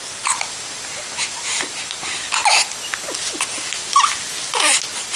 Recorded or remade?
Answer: recorded